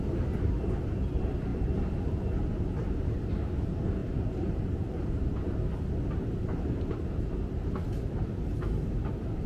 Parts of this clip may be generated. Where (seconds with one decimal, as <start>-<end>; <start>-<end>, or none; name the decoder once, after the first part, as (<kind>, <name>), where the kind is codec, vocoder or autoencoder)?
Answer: 4.0-5.5 (vocoder, BigVGAN v2)